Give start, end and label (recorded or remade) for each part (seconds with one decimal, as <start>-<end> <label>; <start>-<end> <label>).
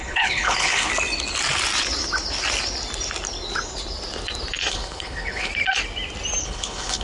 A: 0.0-0.9 remade; 0.9-4.7 recorded; 4.7-5.5 remade; 5.5-6.4 recorded; 6.4-7.0 remade